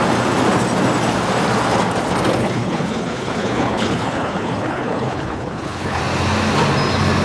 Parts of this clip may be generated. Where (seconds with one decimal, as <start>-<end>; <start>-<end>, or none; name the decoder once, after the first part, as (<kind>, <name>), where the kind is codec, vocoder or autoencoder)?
2.4-6.0 (codec, HILCodec)